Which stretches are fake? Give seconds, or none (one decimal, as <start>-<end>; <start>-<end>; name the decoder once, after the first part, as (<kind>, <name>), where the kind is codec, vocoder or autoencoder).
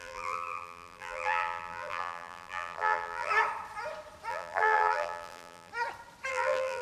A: 0.0-3.3 (vocoder, BigVGAN v2); 4.3-5.7; 6.3-6.8